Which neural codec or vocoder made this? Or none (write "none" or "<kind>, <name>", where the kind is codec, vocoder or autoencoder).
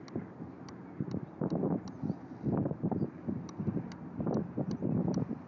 none